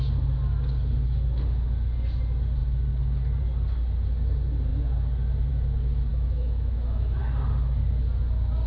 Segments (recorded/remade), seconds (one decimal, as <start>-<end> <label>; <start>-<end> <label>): 0.0-6.1 recorded; 6.1-7.2 remade; 7.2-8.7 recorded

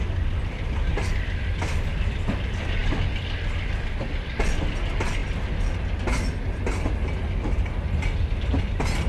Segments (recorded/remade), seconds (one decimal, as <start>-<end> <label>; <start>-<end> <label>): 0.0-9.1 recorded

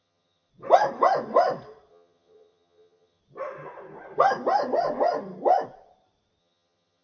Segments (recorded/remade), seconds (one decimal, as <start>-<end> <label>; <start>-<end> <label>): 0.0-0.5 remade; 0.5-1.9 recorded; 1.9-3.2 remade; 3.2-6.4 recorded; 6.4-7.0 remade